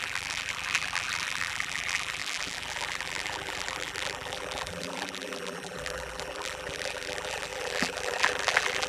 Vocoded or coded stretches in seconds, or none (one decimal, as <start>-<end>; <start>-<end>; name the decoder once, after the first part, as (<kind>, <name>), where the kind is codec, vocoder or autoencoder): 0.0-8.9 (vocoder, BigVGAN v2)